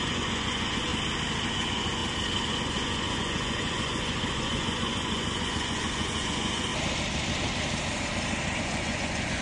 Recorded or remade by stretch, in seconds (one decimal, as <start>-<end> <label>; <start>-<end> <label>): 0.0-0.9 remade; 0.9-1.5 recorded; 1.5-2.0 remade; 2.0-2.5 recorded; 2.5-6.7 remade; 6.7-8.6 recorded; 8.6-9.4 remade